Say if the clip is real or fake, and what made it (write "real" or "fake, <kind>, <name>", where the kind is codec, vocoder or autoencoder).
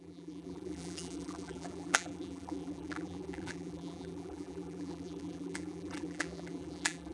fake, vocoder, BigVGAN v2